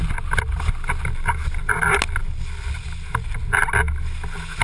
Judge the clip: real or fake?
real